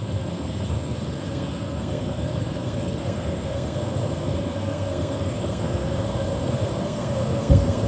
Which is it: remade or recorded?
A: remade